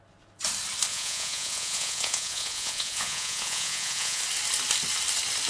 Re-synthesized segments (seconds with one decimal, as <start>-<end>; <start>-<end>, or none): 0.9-4.2